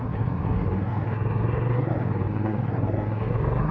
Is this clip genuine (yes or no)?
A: no